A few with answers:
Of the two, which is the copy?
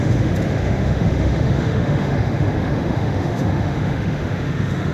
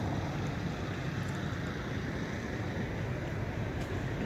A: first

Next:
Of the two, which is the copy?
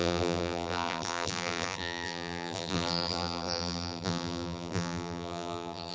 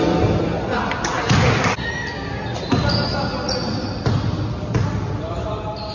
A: first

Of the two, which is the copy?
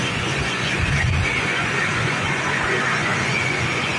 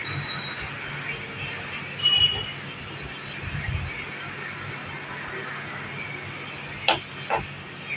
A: first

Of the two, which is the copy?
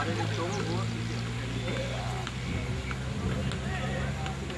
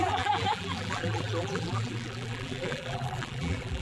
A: second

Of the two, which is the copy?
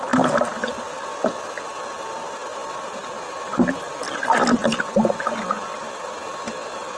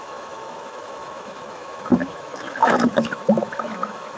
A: second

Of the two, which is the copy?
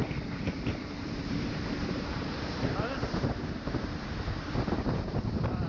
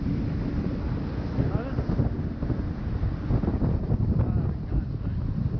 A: first